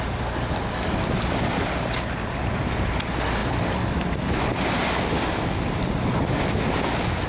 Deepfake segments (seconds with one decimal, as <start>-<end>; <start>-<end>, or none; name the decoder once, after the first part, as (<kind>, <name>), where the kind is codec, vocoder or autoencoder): none